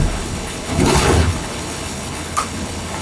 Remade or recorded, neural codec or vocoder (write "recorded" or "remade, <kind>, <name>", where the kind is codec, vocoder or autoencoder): remade, codec, HILCodec